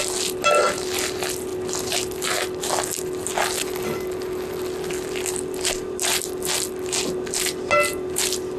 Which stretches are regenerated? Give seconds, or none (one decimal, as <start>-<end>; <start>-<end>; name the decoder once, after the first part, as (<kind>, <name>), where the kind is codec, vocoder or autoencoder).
none

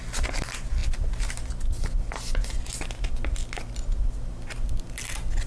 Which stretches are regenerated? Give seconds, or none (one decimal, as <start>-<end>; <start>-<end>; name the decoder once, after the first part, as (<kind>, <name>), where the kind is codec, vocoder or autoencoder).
none

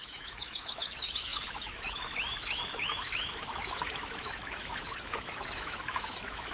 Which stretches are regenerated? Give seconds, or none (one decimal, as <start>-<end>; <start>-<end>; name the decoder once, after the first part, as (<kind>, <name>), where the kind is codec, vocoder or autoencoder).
0.0-6.5 (autoencoder, DAC-VAE)

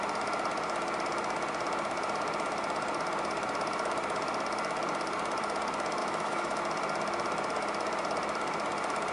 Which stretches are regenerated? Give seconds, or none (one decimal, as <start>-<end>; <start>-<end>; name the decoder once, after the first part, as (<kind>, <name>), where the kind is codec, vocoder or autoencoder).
6.0-6.6 (autoencoder, DAC-VAE)